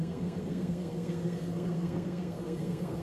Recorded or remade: remade